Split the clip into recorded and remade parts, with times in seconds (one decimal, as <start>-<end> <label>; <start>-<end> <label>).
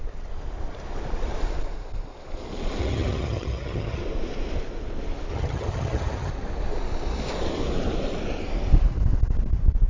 0.0-2.8 recorded; 2.8-4.0 remade; 4.0-5.3 recorded; 5.3-6.3 remade; 6.3-9.9 recorded